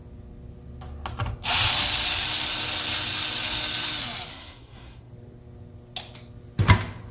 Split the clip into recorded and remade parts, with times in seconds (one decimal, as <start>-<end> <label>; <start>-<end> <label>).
0.0-4.3 recorded; 4.3-5.1 remade; 5.1-7.1 recorded